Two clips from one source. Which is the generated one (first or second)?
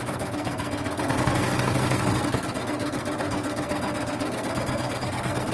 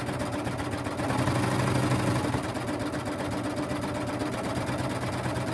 first